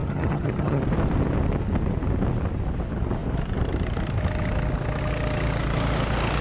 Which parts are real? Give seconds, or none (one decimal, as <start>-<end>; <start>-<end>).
0.8-6.4